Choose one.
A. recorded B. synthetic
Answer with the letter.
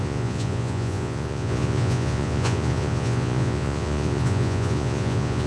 B